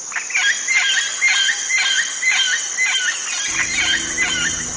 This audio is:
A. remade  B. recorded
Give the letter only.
B